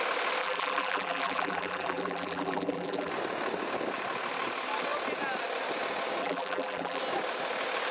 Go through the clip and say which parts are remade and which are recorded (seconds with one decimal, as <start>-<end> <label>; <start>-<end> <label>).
0.0-0.4 recorded; 0.4-3.1 remade; 3.1-6.2 recorded; 6.2-7.0 remade; 7.0-7.9 recorded